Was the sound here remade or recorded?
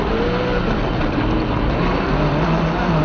recorded